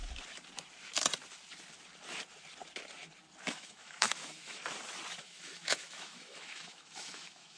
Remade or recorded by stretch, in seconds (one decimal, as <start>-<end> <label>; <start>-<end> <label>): 0.0-3.5 recorded; 3.5-4.6 remade; 4.6-5.2 recorded; 5.2-7.6 remade